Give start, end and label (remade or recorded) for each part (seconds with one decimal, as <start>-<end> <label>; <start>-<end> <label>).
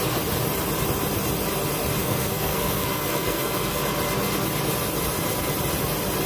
0.0-2.0 recorded; 2.0-3.8 remade; 3.8-6.3 recorded